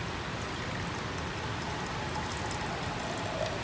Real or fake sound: real